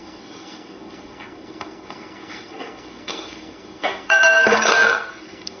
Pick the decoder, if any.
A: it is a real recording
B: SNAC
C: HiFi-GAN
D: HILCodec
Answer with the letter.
B